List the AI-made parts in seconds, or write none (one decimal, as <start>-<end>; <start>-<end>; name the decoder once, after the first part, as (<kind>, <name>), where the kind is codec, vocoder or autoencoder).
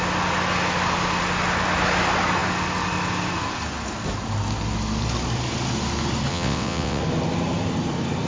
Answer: 6.3-7.0 (vocoder, WaveNeXt)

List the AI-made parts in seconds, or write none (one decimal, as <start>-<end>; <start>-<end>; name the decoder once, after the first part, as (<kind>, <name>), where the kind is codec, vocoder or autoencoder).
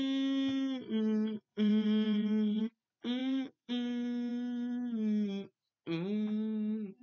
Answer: 1.5-2.6 (vocoder, WaveNeXt); 3.2-3.7